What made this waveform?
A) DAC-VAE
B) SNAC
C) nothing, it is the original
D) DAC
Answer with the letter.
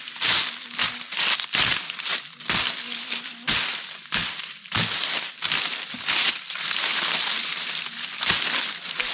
C